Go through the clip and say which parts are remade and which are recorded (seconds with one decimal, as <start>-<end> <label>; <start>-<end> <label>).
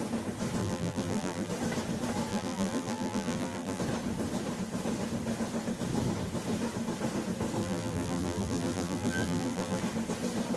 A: 0.0-0.6 recorded; 0.6-1.5 remade; 1.5-2.3 recorded; 2.3-3.8 remade; 3.8-7.6 recorded; 7.6-9.8 remade; 9.8-10.6 recorded